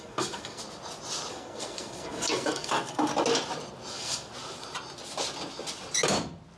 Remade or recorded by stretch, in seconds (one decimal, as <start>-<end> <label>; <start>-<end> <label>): 0.0-0.6 remade; 0.6-1.3 recorded; 1.3-3.1 remade; 3.1-3.9 recorded; 3.9-4.3 remade; 4.3-6.6 recorded